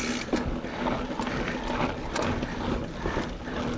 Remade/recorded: recorded